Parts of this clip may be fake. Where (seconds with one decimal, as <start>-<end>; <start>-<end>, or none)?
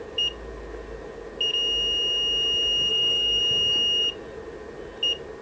2.9-3.4